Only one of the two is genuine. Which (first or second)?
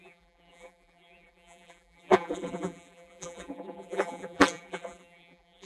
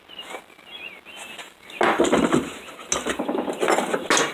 second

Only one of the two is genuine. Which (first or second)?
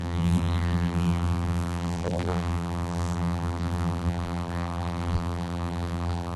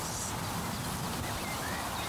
second